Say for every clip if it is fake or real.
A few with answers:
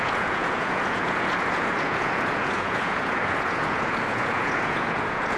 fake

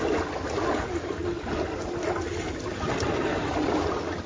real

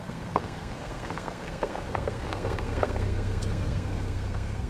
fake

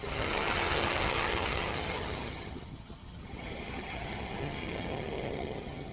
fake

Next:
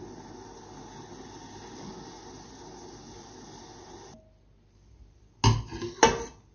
real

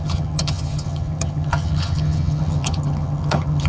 fake